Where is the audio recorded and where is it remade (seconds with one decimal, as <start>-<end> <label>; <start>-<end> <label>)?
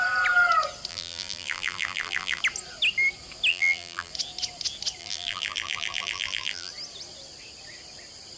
0.0-0.9 recorded; 0.9-2.4 remade; 2.4-3.5 recorded; 3.5-4.1 remade; 4.1-5.0 recorded; 5.0-6.7 remade; 6.7-8.4 recorded